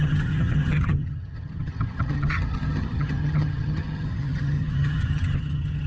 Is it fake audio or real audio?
fake